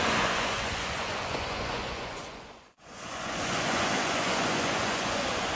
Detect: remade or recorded remade